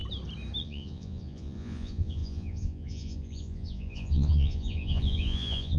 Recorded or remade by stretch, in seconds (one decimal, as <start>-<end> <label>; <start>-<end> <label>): 0.0-0.6 recorded; 0.6-5.8 remade